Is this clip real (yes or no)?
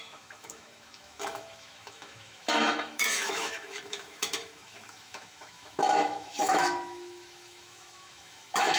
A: no